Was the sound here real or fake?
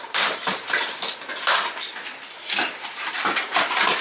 fake